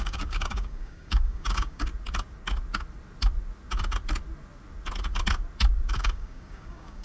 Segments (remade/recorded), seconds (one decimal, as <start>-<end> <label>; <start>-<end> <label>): 0.0-1.9 remade; 1.9-5.9 recorded; 5.9-7.0 remade